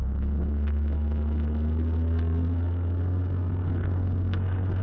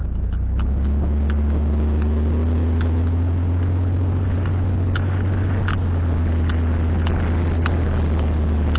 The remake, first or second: first